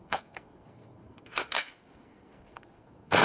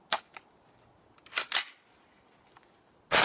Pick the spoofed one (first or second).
first